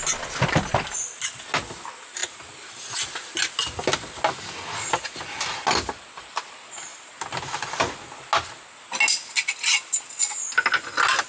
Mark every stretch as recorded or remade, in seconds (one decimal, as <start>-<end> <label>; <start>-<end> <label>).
0.0-11.3 recorded